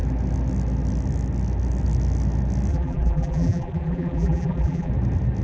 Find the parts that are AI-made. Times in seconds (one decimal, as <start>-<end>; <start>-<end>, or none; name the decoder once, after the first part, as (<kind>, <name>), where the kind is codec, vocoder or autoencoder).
2.7-4.9 (vocoder, BigVGAN v2)